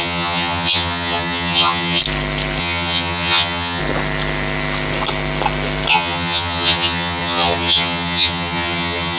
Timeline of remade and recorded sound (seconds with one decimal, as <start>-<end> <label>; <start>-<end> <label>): 0.0-2.0 remade; 2.0-2.6 recorded; 2.6-3.8 remade; 3.8-5.9 recorded; 5.9-9.2 remade